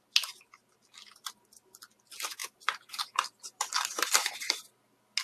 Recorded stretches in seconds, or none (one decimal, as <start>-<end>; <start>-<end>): 0.0-2.4; 4.3-5.2